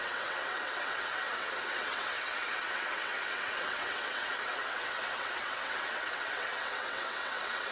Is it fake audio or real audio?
fake